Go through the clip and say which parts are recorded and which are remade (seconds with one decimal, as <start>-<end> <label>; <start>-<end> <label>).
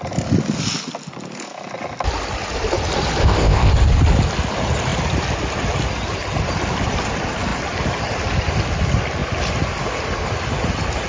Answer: 0.0-3.2 recorded; 3.2-3.7 remade; 3.7-11.1 recorded